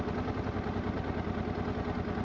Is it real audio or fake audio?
real